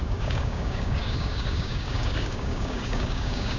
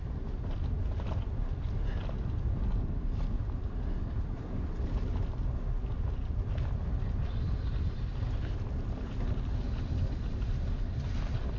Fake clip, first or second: first